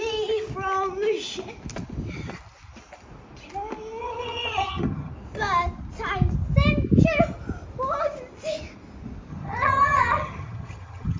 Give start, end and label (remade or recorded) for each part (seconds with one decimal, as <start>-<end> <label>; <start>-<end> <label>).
0.0-4.0 recorded; 4.0-5.1 remade; 5.1-9.3 recorded; 9.3-11.2 remade